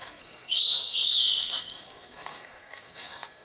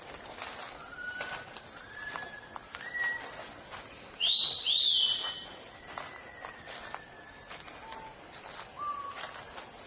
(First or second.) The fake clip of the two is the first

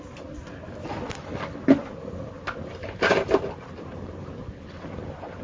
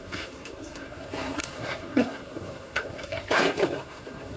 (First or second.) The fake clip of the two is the second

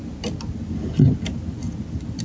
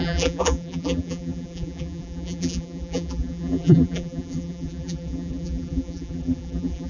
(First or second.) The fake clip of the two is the second